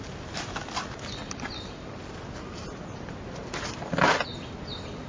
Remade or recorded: recorded